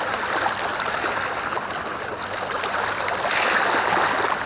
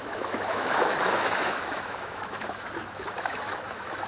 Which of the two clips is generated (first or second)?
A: second